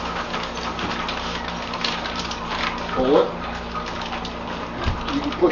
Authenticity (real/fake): real